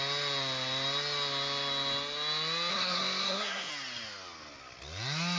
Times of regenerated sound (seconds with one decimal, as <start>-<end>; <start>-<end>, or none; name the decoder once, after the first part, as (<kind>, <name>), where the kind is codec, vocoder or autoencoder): 2.7-3.7 (codec, SNAC)